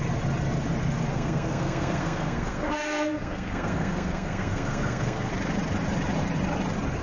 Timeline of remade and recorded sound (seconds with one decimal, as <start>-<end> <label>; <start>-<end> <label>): 0.0-1.1 recorded; 1.1-5.3 remade; 5.3-7.0 recorded